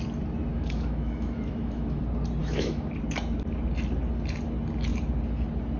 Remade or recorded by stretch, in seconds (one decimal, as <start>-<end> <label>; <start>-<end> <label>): 0.0-0.5 recorded; 0.5-2.0 remade; 2.0-2.4 recorded; 2.4-2.9 remade; 2.9-5.8 recorded